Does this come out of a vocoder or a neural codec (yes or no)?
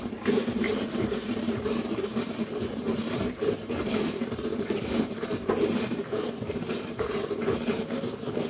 yes